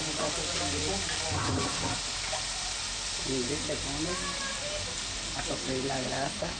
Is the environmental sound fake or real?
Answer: real